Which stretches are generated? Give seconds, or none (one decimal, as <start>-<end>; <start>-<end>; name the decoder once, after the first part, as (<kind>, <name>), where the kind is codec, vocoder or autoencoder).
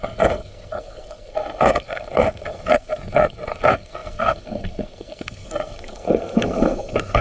0.0-7.2 (codec, SNAC)